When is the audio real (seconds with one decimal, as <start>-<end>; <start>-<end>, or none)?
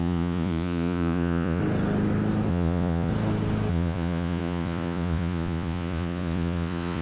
1.6-2.5; 3.1-3.7